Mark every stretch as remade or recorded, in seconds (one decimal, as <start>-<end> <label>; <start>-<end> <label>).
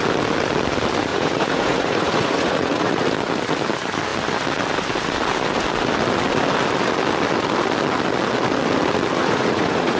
0.0-1.1 recorded; 1.1-3.0 remade; 3.0-9.2 recorded; 9.2-10.0 remade